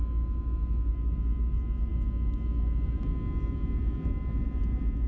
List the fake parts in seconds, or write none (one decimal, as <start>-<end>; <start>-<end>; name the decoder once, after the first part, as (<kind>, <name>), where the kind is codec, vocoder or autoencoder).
none